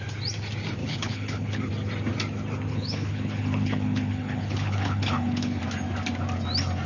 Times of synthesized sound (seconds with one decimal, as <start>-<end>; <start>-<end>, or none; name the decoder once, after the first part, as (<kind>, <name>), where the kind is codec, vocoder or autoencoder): 0.8-1.7 (codec, HILCodec); 2.7-5.6